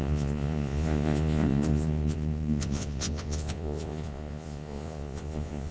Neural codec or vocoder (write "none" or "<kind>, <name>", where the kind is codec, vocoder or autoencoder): vocoder, Vocos